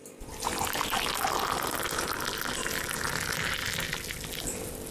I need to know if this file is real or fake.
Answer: real